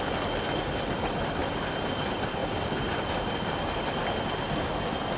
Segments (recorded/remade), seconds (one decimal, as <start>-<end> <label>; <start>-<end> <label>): 0.0-5.2 recorded